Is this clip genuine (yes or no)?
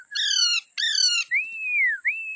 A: yes